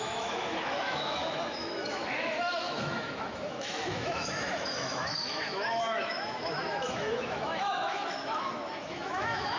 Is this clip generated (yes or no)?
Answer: yes